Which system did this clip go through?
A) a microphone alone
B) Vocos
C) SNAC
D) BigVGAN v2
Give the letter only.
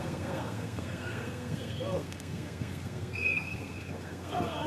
C